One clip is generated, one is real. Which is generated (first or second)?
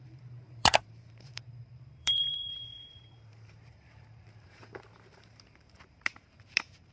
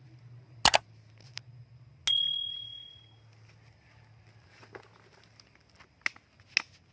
first